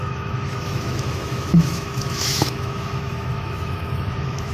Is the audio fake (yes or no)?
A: yes